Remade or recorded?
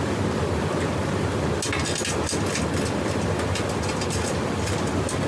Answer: recorded